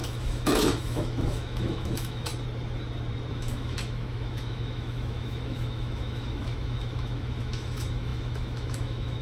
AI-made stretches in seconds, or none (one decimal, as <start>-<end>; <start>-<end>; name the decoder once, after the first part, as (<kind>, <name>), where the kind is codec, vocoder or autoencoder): 0.0-2.3 (autoencoder, DAC-VAE); 3.3-9.2